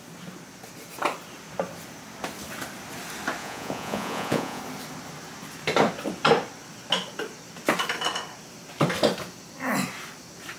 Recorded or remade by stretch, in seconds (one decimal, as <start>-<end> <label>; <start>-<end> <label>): 0.0-3.4 recorded; 3.4-4.6 remade; 4.6-10.6 recorded